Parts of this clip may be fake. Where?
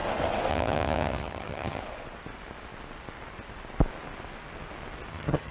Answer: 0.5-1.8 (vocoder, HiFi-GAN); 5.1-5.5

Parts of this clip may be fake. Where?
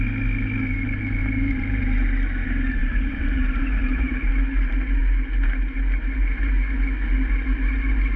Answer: 1.2-1.9 (vocoder, BigVGAN v2); 2.8-4.3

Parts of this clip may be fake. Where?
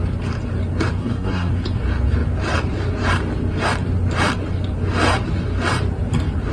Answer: 1.0-1.5 (codec, SNAC)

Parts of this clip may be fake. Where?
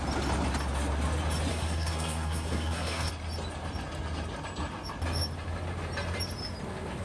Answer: 1.5-3.1 (codec, SNAC)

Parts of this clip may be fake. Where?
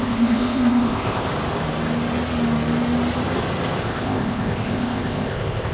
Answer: 0.0-1.3 (codec, ZipCodec); 3.8-5.7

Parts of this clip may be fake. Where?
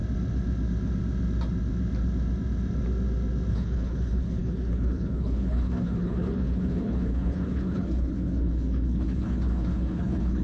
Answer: 3.5-10.4 (codec, HILCodec)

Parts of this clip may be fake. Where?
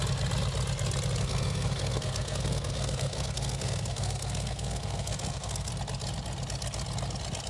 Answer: 1.2-5.7 (codec, SNAC)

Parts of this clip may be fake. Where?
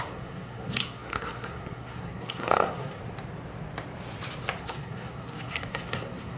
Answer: 0.0-3.0 (codec, SNAC); 4.6-6.4